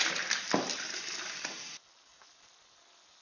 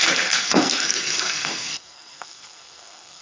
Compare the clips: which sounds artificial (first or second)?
second